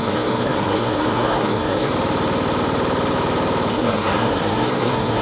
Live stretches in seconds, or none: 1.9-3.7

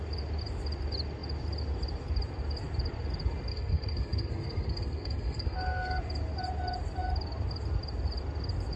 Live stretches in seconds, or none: 0.0-3.5; 6.0-8.8

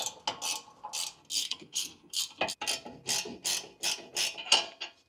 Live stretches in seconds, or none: 0.0-1.4; 2.2-5.1

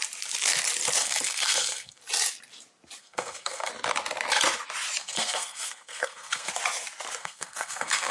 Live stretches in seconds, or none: 0.0-1.0; 2.0-3.0; 3.7-5.0; 6.5-7.2

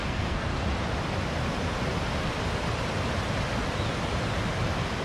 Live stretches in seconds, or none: 0.5-5.0